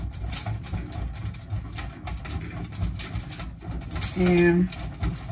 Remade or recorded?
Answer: recorded